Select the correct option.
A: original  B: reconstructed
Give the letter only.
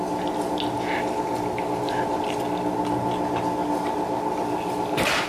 A